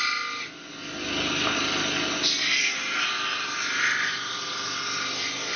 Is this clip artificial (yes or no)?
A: no